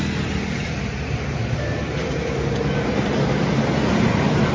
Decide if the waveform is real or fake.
real